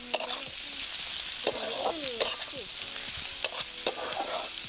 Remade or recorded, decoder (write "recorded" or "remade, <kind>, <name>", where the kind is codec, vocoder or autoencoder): recorded